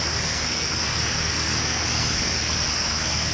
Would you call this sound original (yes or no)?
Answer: no